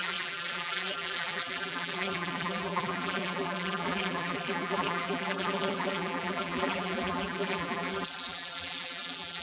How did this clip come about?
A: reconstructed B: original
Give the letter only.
A